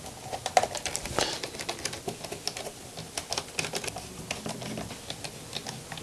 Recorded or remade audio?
recorded